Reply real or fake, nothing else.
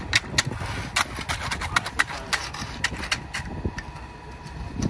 real